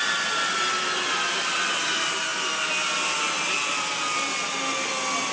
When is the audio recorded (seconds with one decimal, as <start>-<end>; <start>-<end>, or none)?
0.0-5.3